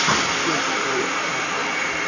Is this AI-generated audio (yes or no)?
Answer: no